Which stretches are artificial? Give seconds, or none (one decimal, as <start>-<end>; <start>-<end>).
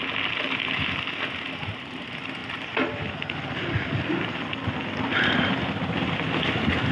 none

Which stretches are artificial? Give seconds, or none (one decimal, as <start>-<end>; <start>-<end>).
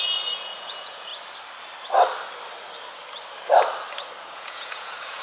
0.0-1.1; 4.2-5.2